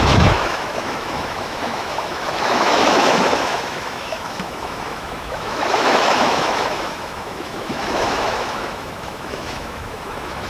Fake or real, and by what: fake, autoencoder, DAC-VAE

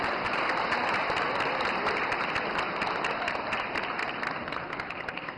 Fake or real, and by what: real